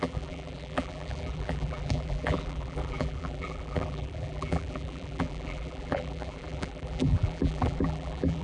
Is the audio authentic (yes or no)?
no